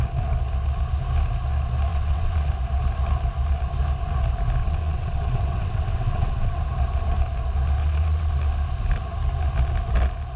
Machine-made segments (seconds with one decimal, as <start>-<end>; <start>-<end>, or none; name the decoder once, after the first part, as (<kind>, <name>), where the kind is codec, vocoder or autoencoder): 1.9-2.5 (vocoder, WaveNeXt); 4.6-6.6; 7.8-8.3